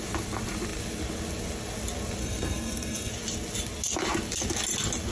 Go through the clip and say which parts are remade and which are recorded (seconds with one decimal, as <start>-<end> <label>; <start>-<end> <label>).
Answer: 0.0-2.2 recorded; 2.2-3.1 remade; 3.1-5.1 recorded